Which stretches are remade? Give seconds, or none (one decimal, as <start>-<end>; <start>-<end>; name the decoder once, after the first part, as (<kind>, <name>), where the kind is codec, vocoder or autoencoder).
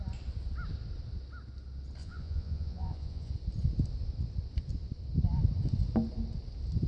2.0-3.3 (vocoder, Vocos)